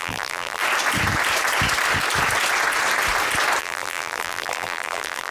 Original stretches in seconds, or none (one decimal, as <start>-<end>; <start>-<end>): 0.6-3.6